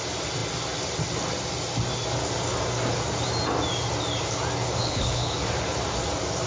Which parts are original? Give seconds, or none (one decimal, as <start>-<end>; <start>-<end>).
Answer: 0.0-4.8; 5.4-6.5